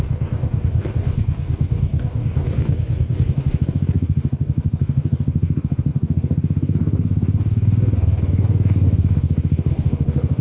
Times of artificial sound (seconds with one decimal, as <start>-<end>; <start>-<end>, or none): 0.0-10.4